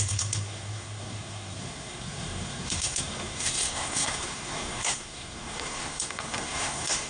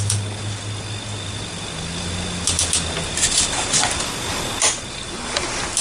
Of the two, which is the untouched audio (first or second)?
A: second